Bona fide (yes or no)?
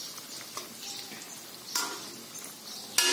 yes